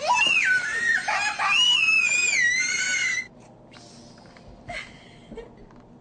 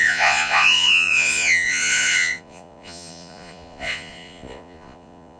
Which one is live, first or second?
first